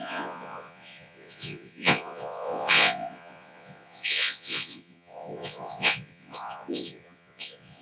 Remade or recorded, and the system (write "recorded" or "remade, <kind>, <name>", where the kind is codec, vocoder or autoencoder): remade, vocoder, Vocos